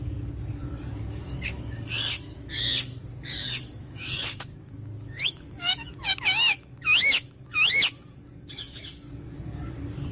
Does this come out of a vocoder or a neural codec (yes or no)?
yes